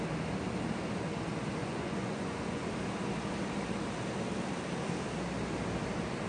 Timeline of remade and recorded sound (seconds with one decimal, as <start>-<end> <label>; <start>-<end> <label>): 0.0-1.6 recorded; 1.6-2.7 remade; 2.7-6.3 recorded